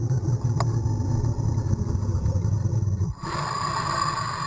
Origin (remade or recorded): recorded